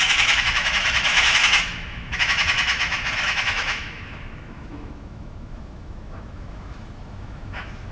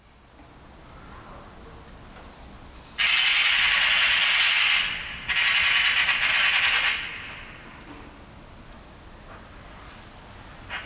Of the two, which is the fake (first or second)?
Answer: first